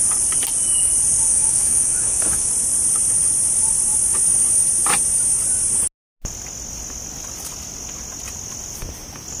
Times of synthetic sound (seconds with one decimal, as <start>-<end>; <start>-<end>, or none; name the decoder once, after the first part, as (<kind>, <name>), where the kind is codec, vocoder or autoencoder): 1.3-2.5 (autoencoder, DAC-VAE)